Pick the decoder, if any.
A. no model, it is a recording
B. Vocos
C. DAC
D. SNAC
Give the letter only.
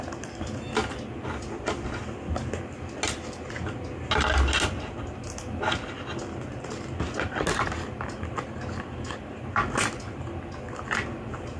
A